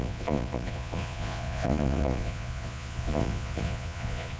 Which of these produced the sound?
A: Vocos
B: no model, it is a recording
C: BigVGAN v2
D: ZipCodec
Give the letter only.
A